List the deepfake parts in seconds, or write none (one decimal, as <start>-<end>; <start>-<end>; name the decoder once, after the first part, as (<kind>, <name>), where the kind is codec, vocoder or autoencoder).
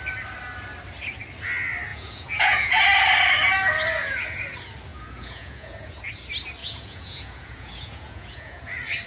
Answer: 1.9-2.8 (vocoder, Vocos); 4.9-6.1; 6.6-8.6